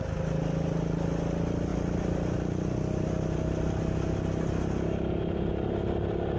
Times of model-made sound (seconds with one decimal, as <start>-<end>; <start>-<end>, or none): none